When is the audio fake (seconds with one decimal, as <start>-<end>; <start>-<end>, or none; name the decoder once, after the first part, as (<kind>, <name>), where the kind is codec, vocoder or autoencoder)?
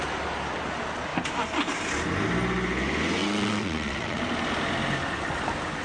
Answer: 3.2-4.2 (vocoder, WaveNeXt)